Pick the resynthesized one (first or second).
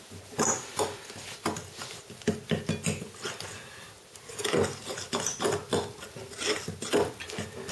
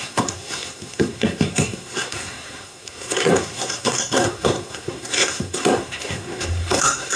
second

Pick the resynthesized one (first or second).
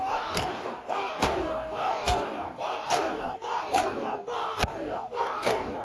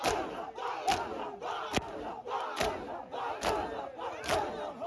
first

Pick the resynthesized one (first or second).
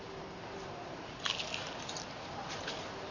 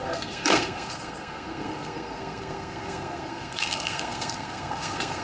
second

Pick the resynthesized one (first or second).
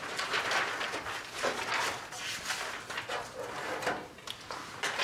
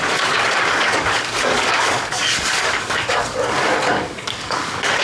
second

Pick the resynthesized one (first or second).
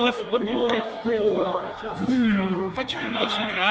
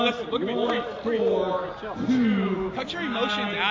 first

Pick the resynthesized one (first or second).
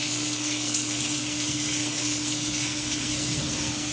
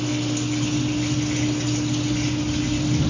first